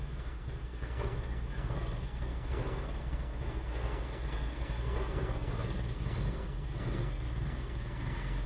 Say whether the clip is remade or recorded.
remade